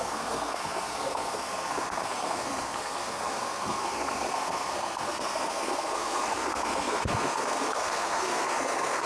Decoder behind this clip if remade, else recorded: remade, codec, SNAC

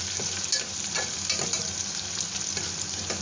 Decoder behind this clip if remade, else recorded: recorded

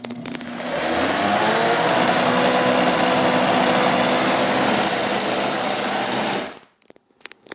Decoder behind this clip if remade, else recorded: recorded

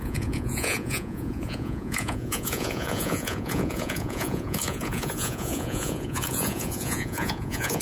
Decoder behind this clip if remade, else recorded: remade, vocoder, Vocos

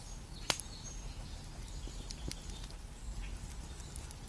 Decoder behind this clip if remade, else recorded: recorded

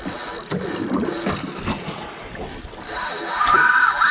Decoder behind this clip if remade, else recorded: recorded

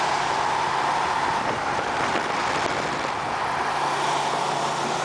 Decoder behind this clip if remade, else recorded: recorded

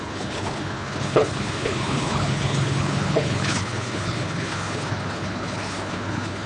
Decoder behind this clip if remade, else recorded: remade, codec, HILCodec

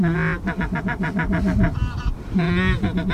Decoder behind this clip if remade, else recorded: recorded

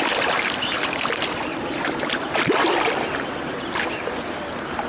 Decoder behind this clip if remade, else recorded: recorded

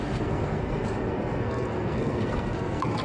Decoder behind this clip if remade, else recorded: remade, codec, SNAC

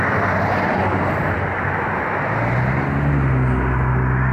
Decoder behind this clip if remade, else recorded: recorded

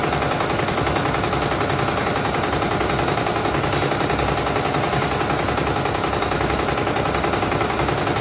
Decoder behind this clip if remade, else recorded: recorded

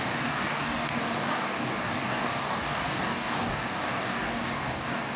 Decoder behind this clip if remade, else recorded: remade, codec, DAC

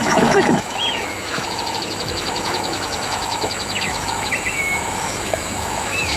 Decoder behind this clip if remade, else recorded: remade, autoencoder, DAC-VAE